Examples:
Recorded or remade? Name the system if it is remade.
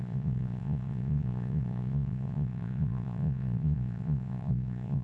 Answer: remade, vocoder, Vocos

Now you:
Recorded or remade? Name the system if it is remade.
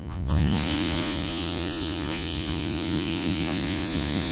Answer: remade, vocoder, Vocos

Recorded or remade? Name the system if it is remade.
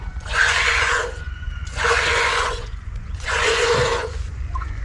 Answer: remade, vocoder, Vocos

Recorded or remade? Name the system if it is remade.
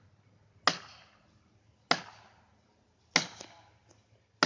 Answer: recorded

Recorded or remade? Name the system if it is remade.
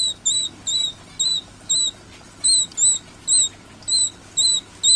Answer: recorded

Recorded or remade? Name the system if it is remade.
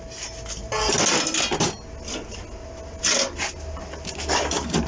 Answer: recorded